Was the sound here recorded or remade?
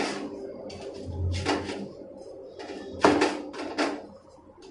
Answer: recorded